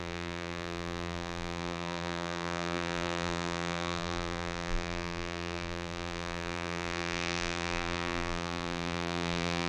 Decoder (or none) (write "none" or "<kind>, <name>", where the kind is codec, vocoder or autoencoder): vocoder, BigVGAN v2